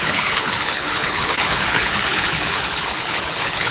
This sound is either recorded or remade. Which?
remade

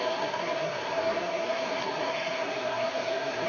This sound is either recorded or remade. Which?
remade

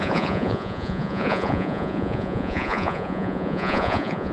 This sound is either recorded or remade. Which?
remade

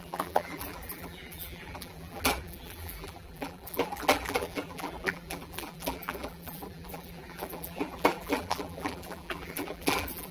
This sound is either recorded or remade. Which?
remade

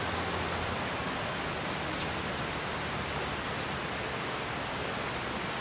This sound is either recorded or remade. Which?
recorded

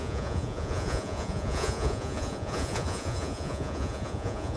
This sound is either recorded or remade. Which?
remade